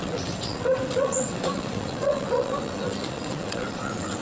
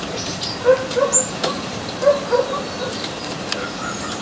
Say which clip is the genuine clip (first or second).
second